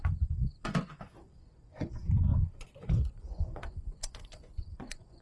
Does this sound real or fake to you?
fake